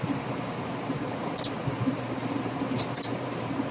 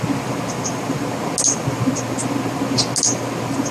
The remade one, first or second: first